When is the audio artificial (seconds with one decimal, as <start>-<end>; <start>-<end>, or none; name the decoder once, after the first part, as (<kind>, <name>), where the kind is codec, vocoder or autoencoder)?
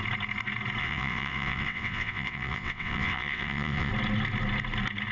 0.8-3.9 (vocoder, WaveNeXt)